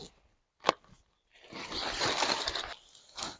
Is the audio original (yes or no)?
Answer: yes